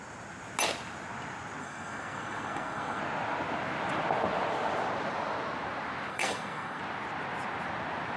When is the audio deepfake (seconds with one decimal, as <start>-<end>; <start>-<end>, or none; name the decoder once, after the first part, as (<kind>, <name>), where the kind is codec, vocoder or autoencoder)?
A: 1.6-3.0 (codec, SNAC); 6.1-6.8